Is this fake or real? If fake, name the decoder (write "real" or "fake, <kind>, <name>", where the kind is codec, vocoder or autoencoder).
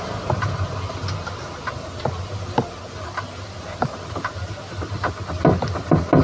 real